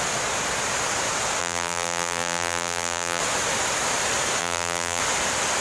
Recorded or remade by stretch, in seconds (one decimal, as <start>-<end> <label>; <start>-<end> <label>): 0.0-1.4 recorded; 1.4-3.2 remade; 3.2-4.4 recorded; 4.4-5.0 remade; 5.0-5.6 recorded